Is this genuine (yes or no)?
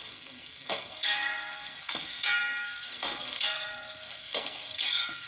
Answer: no